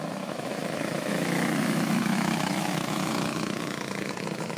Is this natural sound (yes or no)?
no